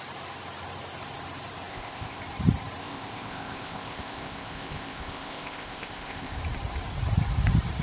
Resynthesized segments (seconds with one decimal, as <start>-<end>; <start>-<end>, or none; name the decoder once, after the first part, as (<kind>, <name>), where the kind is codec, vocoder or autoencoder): 1.7-2.2 (codec, ZipCodec); 2.8-6.4